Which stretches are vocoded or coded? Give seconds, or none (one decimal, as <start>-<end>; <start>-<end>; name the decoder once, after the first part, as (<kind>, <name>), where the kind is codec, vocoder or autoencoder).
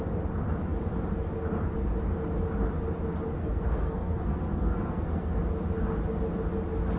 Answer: 3.4-5.4 (codec, SNAC)